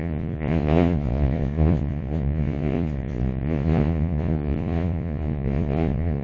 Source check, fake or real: fake